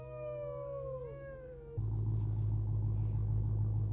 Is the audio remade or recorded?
remade